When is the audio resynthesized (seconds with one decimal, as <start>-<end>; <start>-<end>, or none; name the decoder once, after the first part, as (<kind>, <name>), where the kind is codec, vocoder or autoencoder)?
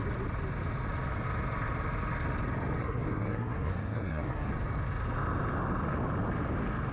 2.8-4.5 (codec, SNAC)